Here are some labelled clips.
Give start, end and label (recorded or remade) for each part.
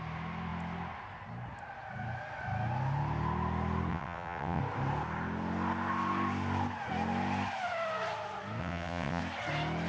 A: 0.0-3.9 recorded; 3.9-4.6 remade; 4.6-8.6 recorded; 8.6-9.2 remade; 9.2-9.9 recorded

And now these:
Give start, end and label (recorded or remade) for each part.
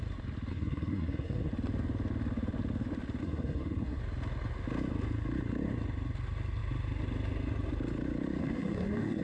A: 0.0-0.5 recorded; 0.5-1.5 remade; 1.5-3.2 recorded; 3.2-4.0 remade; 4.0-8.4 recorded; 8.4-9.2 remade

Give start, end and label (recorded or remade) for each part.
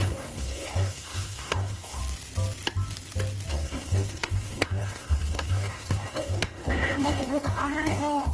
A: 0.0-2.0 remade; 2.0-3.5 recorded; 3.5-8.3 remade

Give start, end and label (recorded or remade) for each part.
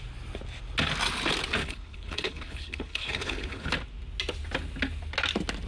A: 0.0-1.6 recorded; 1.6-3.7 remade; 3.7-5.7 recorded